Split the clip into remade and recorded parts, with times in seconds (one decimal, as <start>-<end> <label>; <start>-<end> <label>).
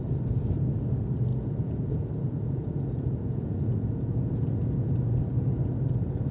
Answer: 0.0-1.3 recorded; 1.3-5.1 remade; 5.1-6.3 recorded